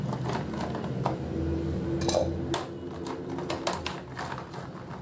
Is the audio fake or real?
real